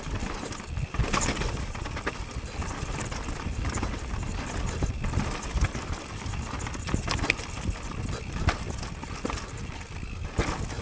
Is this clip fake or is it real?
real